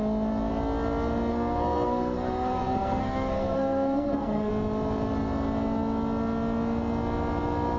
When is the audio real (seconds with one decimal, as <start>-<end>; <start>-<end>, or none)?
0.0-1.3; 4.5-7.8